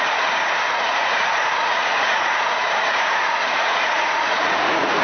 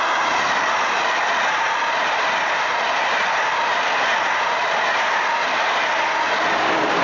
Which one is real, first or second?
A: second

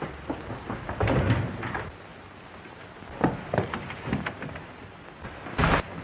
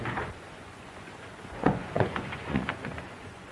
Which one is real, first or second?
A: first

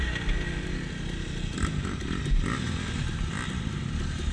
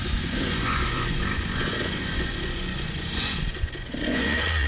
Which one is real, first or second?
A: first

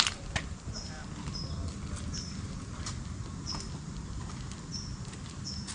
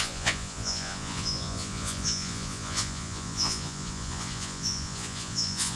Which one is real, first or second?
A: first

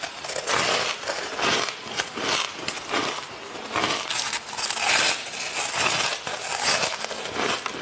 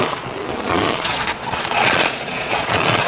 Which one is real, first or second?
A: first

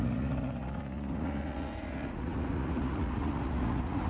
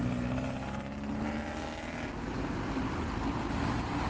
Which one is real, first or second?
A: second